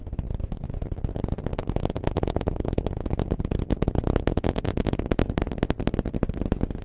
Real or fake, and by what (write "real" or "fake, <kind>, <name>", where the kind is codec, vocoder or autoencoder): real